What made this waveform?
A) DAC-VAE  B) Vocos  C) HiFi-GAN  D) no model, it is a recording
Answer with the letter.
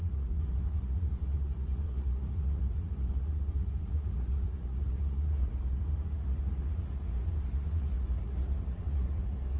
B